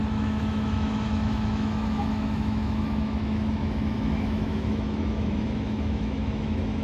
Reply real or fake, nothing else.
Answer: fake